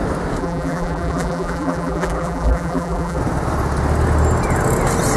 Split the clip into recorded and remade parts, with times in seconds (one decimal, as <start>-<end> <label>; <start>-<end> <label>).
0.0-0.4 recorded; 0.4-3.2 remade; 3.2-5.2 recorded